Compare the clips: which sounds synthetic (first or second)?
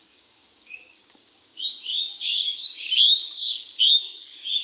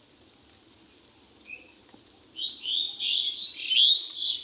first